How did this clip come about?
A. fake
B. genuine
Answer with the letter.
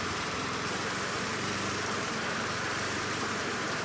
A